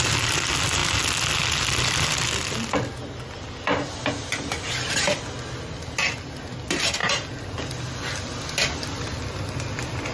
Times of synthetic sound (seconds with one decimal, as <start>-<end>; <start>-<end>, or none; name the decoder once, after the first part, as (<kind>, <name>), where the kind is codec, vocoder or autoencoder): none